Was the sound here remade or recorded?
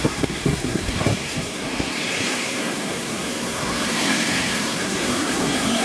remade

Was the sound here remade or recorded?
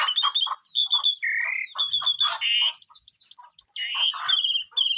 recorded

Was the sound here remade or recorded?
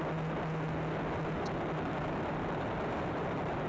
recorded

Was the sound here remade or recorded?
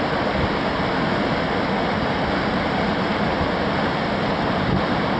recorded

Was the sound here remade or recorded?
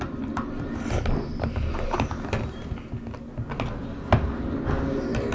recorded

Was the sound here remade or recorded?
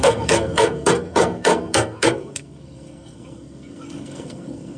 remade